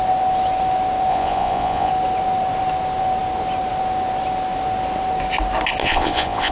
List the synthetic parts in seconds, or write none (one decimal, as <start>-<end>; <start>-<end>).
1.1-1.9; 5.8-6.5